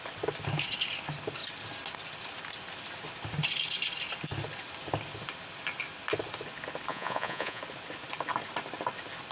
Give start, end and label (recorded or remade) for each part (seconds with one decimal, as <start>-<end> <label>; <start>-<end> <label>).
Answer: 0.0-6.9 recorded; 6.9-7.6 remade; 7.6-9.3 recorded